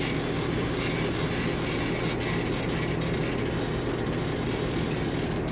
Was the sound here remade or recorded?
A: recorded